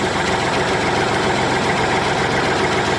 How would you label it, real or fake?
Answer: real